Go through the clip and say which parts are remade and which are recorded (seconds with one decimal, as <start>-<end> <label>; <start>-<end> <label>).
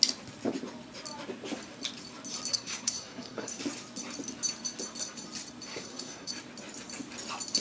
0.0-2.5 recorded; 2.5-3.6 remade; 3.6-5.7 recorded; 5.7-6.3 remade; 6.3-7.6 recorded